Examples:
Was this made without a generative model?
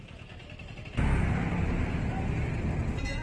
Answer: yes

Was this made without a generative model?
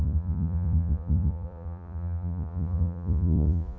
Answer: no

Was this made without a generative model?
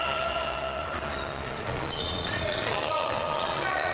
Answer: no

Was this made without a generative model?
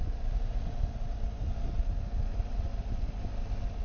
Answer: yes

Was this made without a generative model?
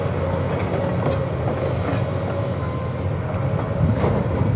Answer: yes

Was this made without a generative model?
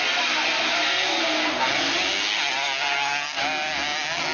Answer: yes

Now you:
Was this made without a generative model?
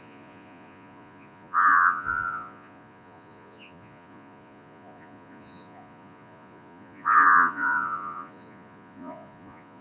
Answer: no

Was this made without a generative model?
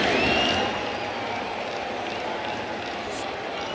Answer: yes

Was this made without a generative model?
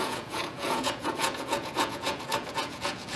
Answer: no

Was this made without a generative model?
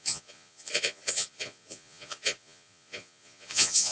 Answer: no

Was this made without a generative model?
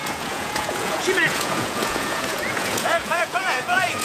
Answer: no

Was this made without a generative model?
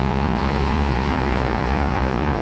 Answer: no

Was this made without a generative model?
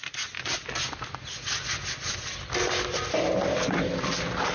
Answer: yes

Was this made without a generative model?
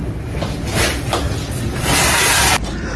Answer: yes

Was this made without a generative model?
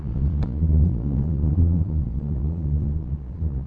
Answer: no